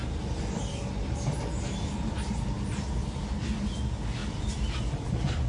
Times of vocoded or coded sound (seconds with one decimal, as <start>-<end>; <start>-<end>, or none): none